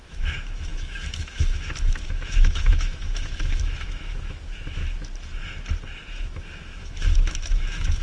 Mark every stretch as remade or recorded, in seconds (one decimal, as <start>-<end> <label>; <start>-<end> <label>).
0.0-4.8 remade; 4.8-6.1 recorded; 6.1-8.0 remade